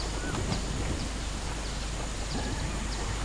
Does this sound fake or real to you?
real